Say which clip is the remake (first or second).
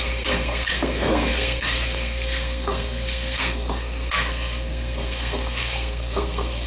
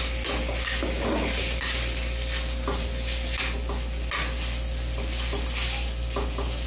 first